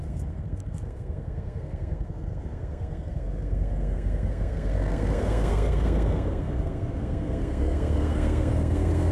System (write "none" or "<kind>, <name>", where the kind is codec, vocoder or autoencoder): codec, SNAC